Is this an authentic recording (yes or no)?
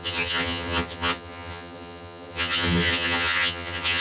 no